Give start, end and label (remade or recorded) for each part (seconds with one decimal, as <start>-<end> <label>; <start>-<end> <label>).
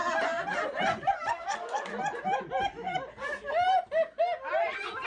0.0-1.3 recorded; 1.3-1.9 remade; 1.9-5.1 recorded